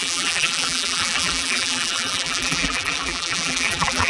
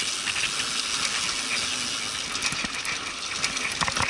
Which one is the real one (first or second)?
second